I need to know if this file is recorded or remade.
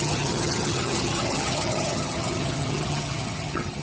remade